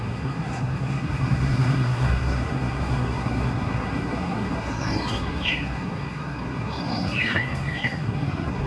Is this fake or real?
fake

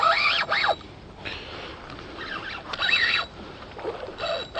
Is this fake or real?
real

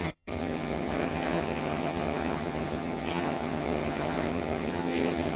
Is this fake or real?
fake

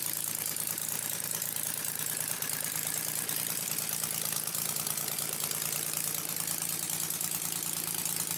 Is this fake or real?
real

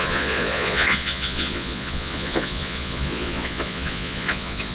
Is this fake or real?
fake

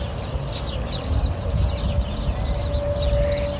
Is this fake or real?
real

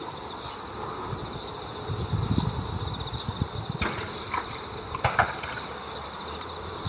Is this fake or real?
real